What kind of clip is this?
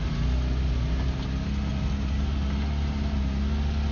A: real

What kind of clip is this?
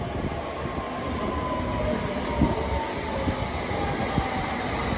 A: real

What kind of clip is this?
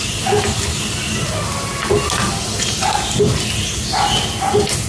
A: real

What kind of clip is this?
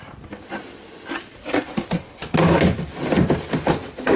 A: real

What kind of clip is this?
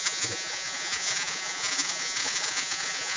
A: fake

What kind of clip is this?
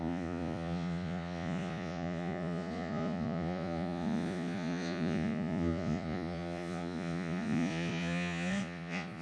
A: fake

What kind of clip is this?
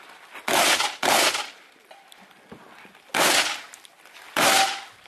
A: real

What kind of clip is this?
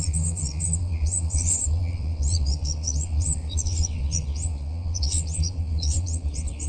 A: fake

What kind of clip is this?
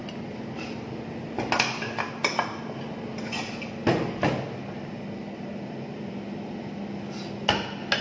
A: real